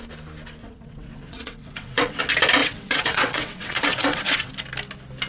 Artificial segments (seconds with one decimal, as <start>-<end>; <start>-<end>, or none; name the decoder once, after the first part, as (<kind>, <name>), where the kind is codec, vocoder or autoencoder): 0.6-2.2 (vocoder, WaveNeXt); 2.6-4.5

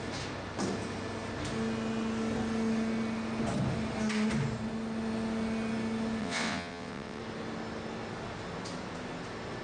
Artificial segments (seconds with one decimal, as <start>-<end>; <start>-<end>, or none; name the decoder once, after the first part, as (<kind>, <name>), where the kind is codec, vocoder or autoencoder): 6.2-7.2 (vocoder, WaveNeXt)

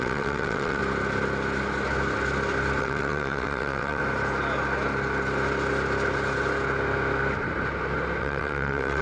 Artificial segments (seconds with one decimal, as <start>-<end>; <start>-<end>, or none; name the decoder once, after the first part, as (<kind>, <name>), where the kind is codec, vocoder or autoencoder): 0.0-0.8 (vocoder, WaveNeXt); 2.8-4.0; 8.2-9.0

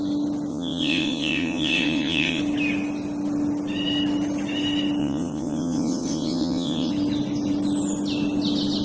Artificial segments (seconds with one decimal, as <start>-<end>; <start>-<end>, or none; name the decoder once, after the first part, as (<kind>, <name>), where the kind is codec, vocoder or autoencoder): 0.5-2.4 (vocoder, WaveNeXt); 5.0-6.9

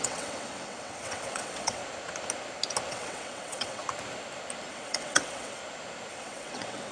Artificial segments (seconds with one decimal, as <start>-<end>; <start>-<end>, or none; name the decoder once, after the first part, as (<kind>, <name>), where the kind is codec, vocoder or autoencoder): 0.0-1.8 (vocoder, WaveNeXt); 2.9-3.8; 4.7-5.6; 6.1-6.9